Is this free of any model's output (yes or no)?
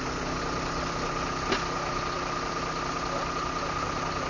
yes